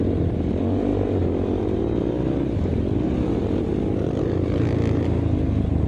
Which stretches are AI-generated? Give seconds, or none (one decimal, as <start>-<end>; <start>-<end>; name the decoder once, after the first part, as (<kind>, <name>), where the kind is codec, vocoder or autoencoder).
0.9-4.2 (vocoder, BigVGAN v2)